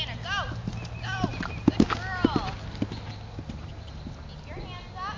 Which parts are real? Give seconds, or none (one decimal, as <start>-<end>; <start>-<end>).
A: 0.0-5.2